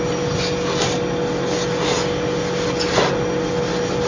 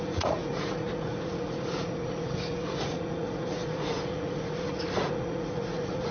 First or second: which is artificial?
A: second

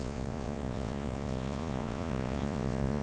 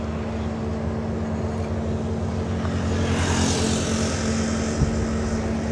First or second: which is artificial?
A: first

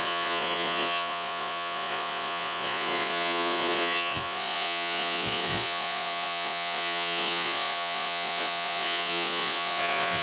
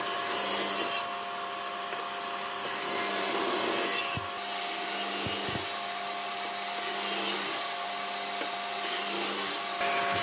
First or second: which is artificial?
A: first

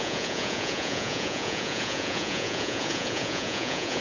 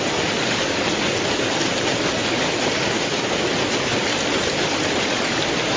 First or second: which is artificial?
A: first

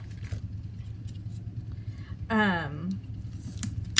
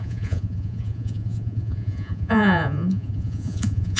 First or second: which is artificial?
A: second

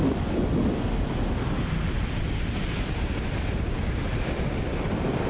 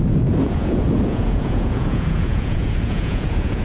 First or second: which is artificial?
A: second